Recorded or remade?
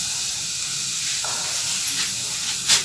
recorded